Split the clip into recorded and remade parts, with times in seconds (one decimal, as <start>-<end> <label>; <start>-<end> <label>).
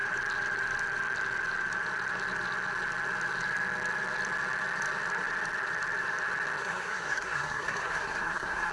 0.0-6.6 recorded; 6.6-8.7 remade